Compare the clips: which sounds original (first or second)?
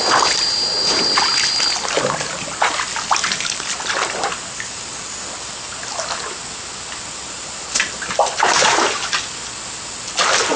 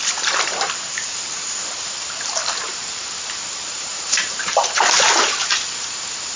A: first